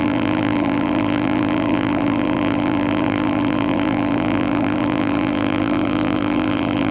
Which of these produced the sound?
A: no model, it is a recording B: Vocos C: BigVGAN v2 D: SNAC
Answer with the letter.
C